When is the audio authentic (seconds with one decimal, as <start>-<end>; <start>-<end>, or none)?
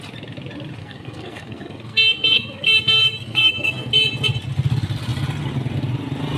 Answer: 0.0-0.8; 3.9-6.4